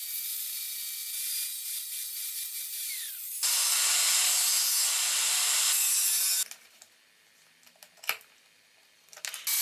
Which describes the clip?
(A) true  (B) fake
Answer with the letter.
A